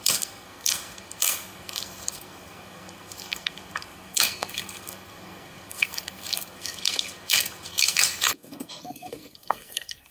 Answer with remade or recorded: remade